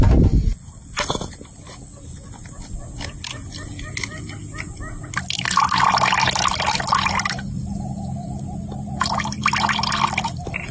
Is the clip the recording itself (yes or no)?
yes